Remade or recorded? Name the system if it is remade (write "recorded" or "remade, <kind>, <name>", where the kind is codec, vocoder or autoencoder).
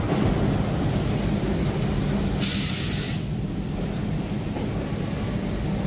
recorded